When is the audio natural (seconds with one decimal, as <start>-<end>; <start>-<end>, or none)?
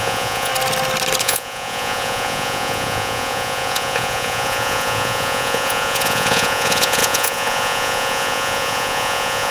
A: 0.5-1.2